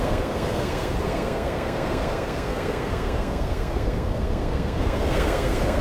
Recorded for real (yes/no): no